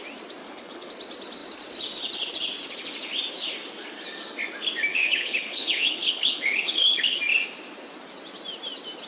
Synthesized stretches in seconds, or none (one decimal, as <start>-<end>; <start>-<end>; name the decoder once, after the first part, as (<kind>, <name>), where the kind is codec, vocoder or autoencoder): 0.4-0.9 (codec, HILCodec); 4.9-7.2